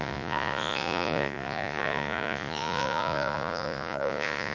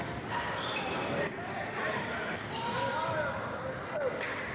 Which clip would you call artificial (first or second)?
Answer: first